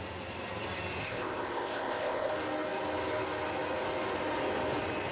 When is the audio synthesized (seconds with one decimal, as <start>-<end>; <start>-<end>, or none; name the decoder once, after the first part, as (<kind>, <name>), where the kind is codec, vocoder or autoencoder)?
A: 1.0-2.3 (codec, ZipCodec)